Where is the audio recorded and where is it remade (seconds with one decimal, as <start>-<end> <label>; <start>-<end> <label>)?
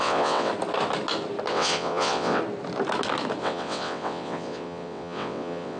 0.0-0.5 remade; 0.5-1.5 recorded; 1.5-2.4 remade; 2.4-3.4 recorded; 3.4-5.8 remade